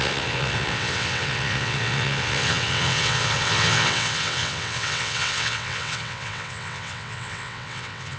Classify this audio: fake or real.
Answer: fake